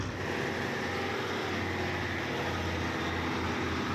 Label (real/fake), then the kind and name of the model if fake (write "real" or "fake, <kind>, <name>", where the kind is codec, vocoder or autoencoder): real